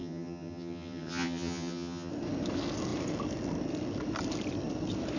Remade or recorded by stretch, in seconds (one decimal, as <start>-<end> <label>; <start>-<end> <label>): 0.0-2.1 remade; 2.1-5.2 recorded